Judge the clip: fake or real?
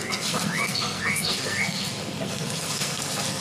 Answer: fake